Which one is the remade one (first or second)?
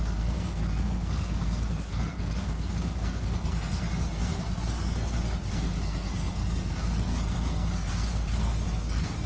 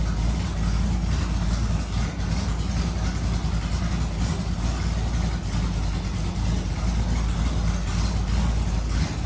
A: first